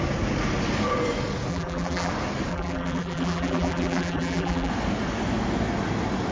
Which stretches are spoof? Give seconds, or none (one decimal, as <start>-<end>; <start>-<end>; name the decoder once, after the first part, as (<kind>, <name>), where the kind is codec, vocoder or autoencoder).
1.5-2.1 (vocoder, BigVGAN v2); 2.5-4.7

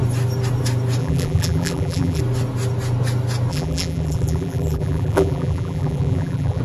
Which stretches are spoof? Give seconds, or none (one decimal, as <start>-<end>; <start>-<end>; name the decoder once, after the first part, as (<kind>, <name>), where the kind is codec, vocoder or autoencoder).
1.0-2.2 (vocoder, BigVGAN v2); 3.5-6.6

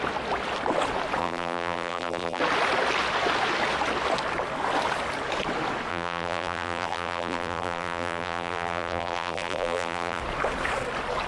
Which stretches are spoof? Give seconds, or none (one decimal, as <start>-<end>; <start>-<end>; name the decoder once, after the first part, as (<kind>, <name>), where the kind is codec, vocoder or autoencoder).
1.2-2.4 (vocoder, BigVGAN v2); 5.9-10.2

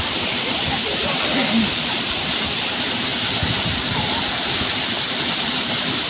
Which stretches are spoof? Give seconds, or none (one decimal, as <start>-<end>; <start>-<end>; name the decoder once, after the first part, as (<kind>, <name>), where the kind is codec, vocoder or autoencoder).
0.0-3.1 (vocoder, BigVGAN v2); 4.2-6.1